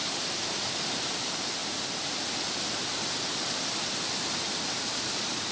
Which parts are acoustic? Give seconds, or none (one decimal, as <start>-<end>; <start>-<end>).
1.6-4.9